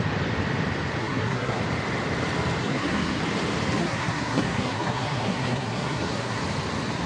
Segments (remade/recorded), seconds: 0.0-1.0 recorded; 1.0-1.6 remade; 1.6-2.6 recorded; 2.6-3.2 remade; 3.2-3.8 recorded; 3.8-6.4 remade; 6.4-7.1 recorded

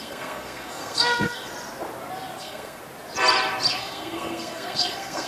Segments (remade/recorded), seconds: 0.0-1.5 remade; 1.5-2.4 recorded; 2.4-2.8 remade; 2.8-3.7 recorded; 3.7-5.3 remade

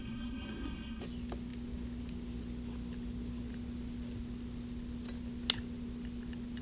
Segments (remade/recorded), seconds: 0.0-1.0 remade; 1.0-6.6 recorded

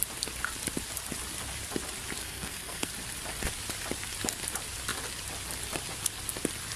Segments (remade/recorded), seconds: 0.0-2.2 recorded; 2.2-2.9 remade; 2.9-6.8 recorded

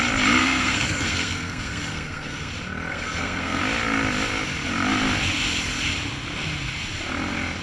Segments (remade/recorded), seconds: 0.0-0.4 recorded; 0.4-2.5 remade; 2.5-2.9 recorded; 2.9-3.6 remade; 3.6-7.6 recorded

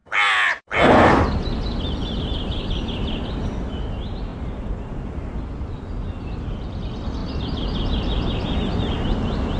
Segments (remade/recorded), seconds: 0.0-9.6 recorded